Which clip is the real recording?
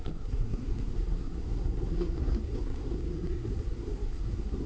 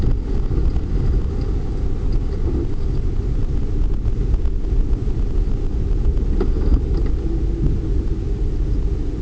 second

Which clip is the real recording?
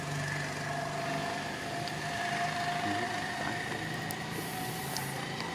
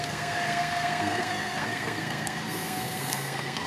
first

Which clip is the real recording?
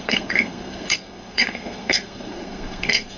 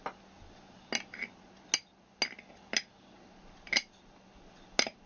second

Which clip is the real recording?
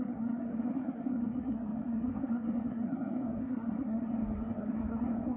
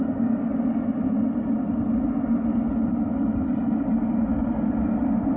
second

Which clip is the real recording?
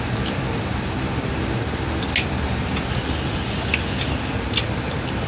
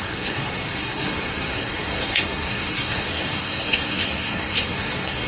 first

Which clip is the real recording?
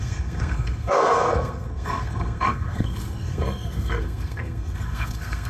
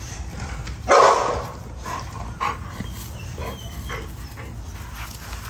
second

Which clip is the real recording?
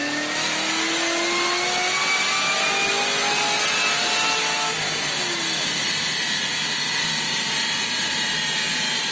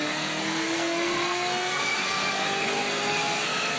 first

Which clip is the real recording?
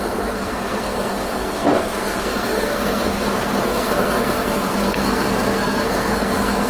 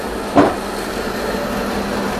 second